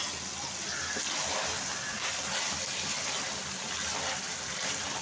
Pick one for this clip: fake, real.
real